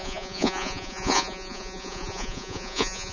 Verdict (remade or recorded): remade